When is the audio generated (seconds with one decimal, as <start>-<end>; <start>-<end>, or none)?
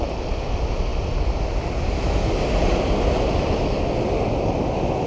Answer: none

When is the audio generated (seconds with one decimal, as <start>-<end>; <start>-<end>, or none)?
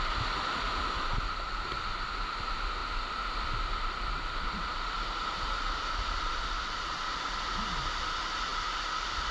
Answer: 2.8-7.2; 8.5-9.3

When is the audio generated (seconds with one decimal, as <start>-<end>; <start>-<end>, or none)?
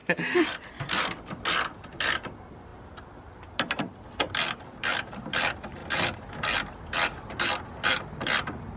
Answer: 0.0-0.7; 2.7-3.5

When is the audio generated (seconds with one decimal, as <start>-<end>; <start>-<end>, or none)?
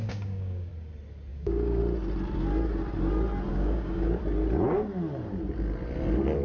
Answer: 0.0-0.7; 1.3-1.8; 3.5-4.2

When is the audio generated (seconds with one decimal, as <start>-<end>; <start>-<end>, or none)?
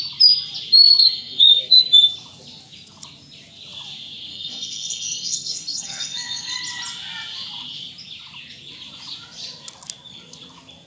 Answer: 0.9-1.8; 4.3-6.6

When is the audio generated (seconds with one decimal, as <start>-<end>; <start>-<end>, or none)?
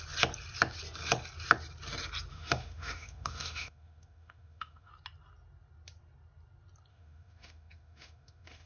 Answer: 2.3-4.9; 6.9-8.7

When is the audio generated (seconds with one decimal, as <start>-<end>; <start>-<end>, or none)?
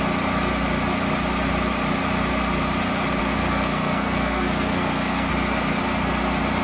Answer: 3.2-5.3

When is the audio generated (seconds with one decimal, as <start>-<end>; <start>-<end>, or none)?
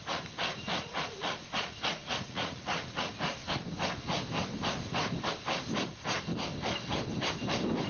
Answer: 0.7-3.1